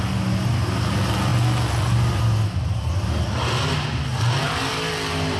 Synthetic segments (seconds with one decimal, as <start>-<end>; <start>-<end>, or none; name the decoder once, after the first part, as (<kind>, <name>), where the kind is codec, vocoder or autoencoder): none